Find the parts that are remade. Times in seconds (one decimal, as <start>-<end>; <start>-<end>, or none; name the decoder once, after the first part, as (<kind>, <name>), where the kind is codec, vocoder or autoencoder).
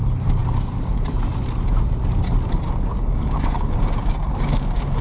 2.9-5.0 (codec, DAC)